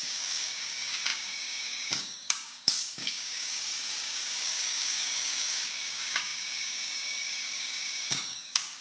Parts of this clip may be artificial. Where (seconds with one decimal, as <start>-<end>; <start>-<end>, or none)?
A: 0.0-8.8